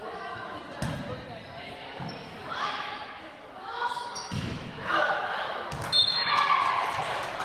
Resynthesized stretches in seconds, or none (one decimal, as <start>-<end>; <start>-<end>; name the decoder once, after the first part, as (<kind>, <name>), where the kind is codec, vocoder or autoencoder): 0.0-0.6 (autoencoder, DAC-VAE); 2.2-6.6